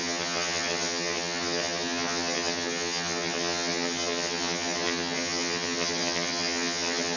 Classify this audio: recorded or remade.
remade